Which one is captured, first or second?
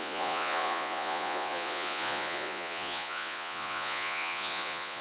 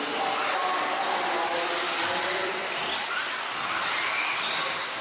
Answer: second